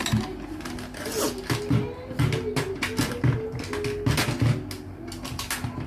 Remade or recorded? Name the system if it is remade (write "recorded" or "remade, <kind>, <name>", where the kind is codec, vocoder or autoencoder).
recorded